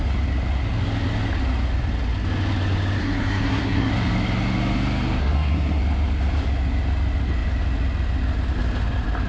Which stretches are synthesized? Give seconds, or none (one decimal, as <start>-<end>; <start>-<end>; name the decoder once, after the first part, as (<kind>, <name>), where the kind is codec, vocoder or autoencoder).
3.0-3.9 (codec, SNAC); 5.2-5.8